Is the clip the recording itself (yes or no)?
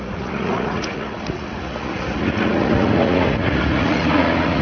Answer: no